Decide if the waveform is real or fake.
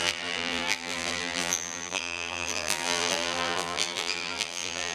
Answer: fake